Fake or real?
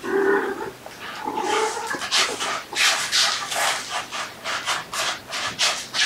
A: real